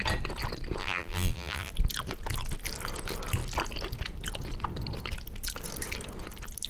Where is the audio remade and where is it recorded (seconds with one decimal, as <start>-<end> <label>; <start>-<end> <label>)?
0.0-0.8 recorded; 0.8-1.7 remade; 1.7-6.7 recorded